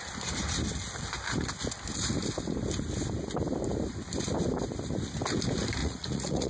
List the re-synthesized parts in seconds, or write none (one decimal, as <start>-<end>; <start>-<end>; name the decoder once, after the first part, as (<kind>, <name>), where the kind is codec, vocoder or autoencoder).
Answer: 5.8-6.5 (vocoder, Vocos)